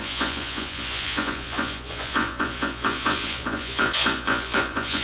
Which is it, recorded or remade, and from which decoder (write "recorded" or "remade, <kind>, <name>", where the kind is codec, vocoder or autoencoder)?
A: remade, vocoder, Vocos